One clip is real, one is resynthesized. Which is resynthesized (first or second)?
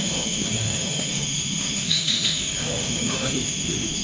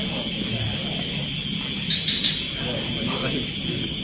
first